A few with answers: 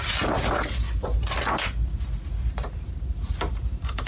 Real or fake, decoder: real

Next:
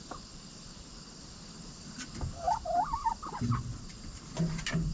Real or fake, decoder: real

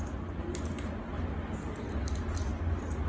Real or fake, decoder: real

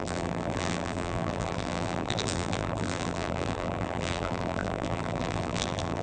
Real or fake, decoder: fake, vocoder, BigVGAN v2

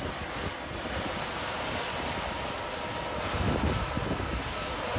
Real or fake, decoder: real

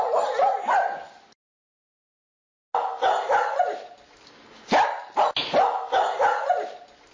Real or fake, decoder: real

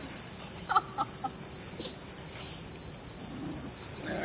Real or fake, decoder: real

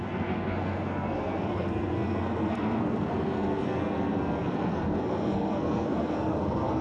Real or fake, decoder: fake, codec, SNAC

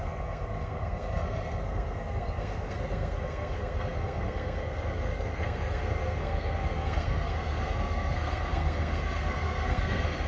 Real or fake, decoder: fake, codec, SNAC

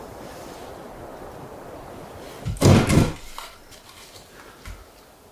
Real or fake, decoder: real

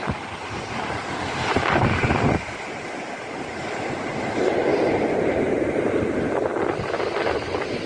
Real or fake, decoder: real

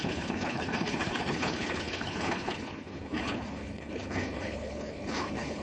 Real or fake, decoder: fake, codec, HILCodec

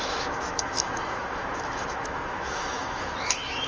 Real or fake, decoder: fake, autoencoder, DAC-VAE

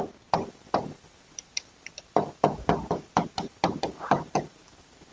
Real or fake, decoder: fake, vocoder, BigVGAN v2